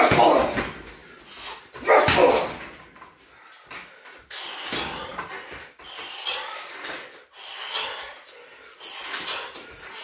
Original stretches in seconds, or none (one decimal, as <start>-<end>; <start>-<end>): 0.0-10.0